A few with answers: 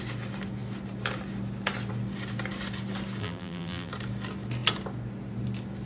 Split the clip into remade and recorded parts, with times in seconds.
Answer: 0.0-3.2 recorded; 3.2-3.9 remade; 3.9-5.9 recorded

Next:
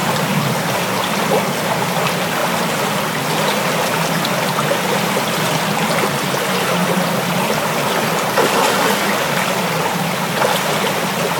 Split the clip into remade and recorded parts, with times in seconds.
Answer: 0.0-11.4 recorded

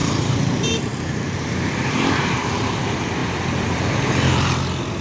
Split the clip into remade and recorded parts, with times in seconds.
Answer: 0.0-2.8 remade; 2.8-3.2 recorded; 3.2-4.6 remade; 4.6-5.0 recorded

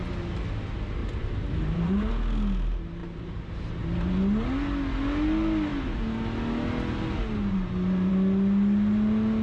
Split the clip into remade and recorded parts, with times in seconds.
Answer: 0.0-1.0 recorded; 1.0-2.1 remade; 2.1-3.0 recorded; 3.0-3.8 remade; 3.8-9.4 recorded

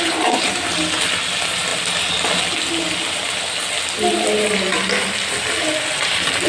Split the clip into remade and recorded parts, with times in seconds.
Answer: 0.0-1.7 recorded; 1.7-2.5 remade; 2.5-6.5 recorded

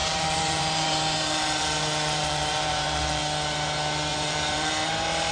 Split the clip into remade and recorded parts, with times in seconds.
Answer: 0.0-3.2 remade; 3.2-4.1 recorded; 4.1-4.7 remade; 4.7-5.3 recorded

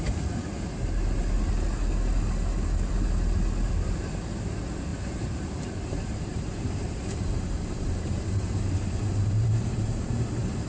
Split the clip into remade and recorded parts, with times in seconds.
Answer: 0.0-4.9 recorded; 4.9-10.0 remade; 10.0-10.7 recorded